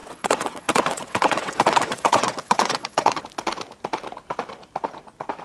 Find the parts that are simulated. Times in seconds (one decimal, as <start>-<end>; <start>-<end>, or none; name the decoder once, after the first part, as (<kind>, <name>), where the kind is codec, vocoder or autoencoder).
0.0-3.2 (vocoder, WaveNeXt)